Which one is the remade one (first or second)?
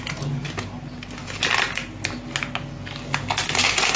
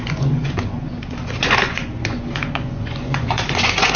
second